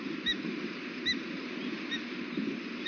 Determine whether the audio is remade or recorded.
recorded